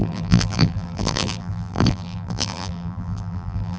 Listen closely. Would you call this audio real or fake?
fake